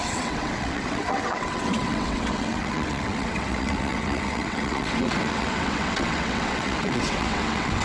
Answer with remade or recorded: remade